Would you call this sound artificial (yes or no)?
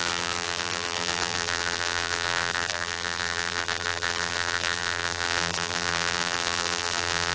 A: yes